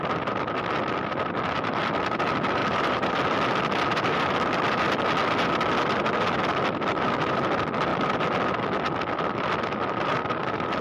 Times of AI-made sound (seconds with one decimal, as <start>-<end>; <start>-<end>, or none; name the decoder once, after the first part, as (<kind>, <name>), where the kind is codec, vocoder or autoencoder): 2.6-3.1 (vocoder, BigVGAN v2)